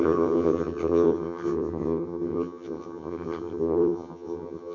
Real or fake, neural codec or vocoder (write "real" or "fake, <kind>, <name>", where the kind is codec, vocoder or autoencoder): fake, vocoder, HiFi-GAN